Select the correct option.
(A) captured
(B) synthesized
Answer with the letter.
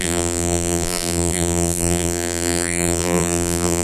B